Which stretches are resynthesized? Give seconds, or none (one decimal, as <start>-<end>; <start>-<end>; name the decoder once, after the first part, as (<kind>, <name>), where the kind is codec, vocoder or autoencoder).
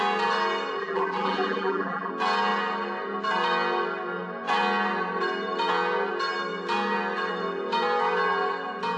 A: 0.8-2.1 (vocoder, BigVGAN v2)